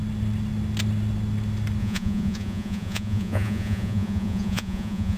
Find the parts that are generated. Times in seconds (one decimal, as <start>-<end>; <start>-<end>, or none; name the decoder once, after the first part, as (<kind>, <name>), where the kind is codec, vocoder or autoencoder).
1.8-5.2 (vocoder, Vocos)